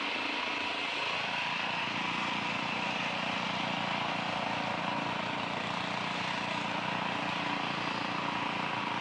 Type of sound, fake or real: real